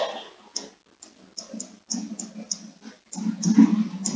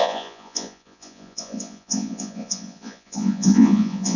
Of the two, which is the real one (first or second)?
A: first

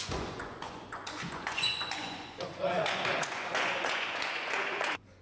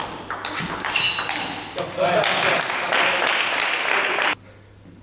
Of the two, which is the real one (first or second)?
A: second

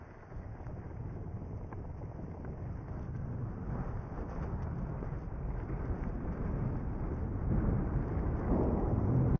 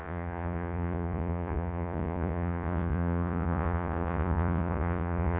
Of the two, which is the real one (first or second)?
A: first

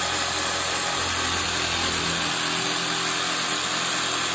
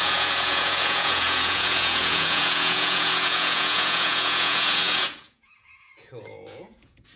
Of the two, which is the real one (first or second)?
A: first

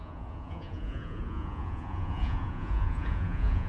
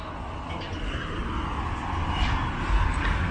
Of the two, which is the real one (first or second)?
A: second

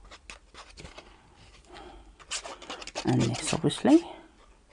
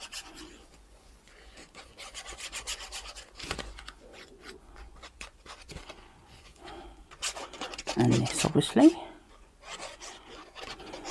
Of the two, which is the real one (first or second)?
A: first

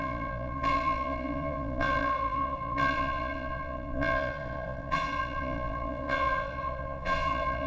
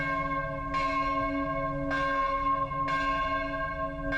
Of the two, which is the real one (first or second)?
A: second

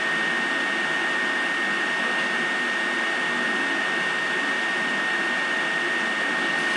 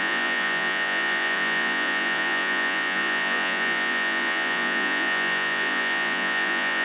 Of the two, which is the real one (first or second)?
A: first